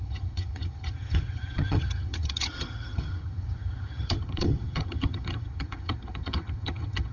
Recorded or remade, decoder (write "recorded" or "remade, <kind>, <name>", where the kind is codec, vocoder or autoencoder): remade, vocoder, HiFi-GAN